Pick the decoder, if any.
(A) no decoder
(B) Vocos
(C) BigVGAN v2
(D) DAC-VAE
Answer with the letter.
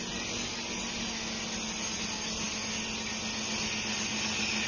A